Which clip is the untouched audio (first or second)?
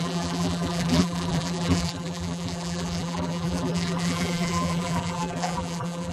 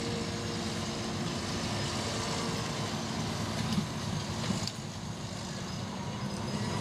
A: second